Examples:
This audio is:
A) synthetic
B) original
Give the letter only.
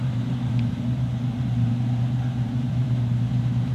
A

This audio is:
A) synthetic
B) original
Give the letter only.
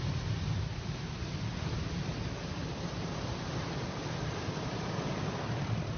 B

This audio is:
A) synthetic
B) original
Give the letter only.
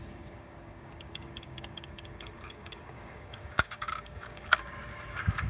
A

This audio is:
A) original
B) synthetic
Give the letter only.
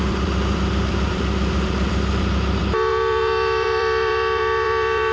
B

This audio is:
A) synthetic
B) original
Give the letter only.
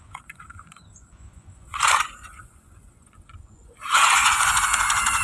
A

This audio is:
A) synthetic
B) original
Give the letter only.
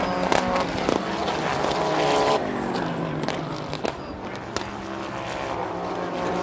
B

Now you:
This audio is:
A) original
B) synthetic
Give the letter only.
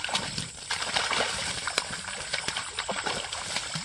B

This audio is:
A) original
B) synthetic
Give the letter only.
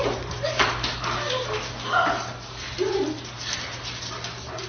A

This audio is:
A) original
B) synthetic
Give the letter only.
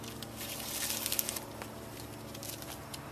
A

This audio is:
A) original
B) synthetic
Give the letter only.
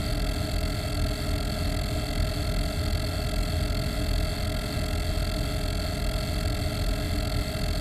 A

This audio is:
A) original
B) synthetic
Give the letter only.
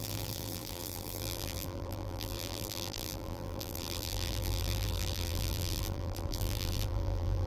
B